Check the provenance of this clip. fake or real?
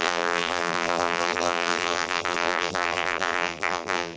fake